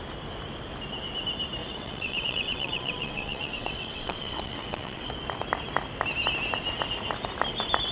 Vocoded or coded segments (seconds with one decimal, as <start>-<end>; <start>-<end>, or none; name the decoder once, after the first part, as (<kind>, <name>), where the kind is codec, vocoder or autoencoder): 1.6-5.1 (vocoder, WaveNeXt)